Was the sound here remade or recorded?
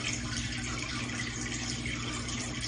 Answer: recorded